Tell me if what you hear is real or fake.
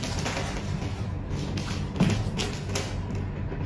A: real